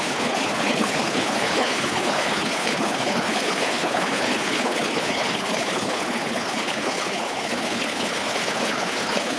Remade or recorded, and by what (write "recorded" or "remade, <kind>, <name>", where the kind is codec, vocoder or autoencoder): remade, codec, HILCodec